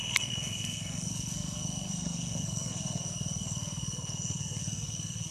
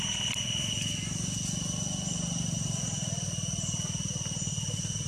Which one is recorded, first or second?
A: second